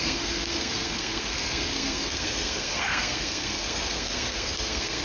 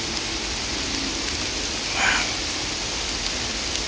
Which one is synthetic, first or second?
first